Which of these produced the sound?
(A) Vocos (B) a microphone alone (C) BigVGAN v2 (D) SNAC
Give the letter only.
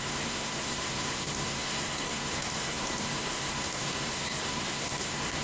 D